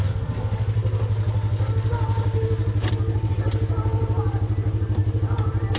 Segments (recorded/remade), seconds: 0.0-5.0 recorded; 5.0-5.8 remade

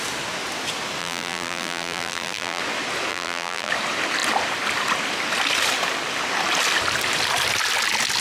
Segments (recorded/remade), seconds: 0.0-1.0 recorded; 1.0-2.6 remade; 2.6-3.1 recorded; 3.1-3.7 remade; 3.7-8.2 recorded

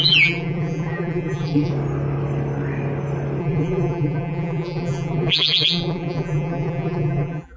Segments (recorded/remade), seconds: 0.0-1.7 remade; 1.7-3.4 recorded; 3.4-7.6 remade

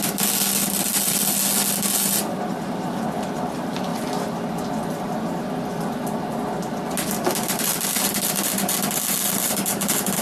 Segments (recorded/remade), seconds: 0.0-10.2 recorded

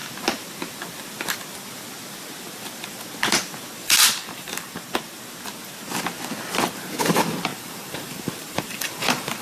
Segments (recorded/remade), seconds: 0.0-3.8 recorded; 3.8-4.8 remade; 4.8-7.5 recorded; 7.5-9.4 remade

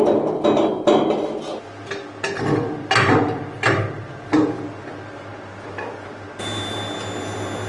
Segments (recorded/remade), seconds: 0.0-7.7 recorded

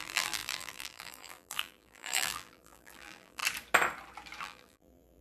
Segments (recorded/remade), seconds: 0.0-3.4 remade; 3.4-4.4 recorded; 4.4-5.2 remade

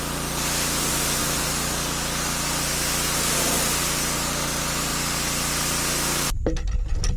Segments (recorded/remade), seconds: 0.0-7.2 recorded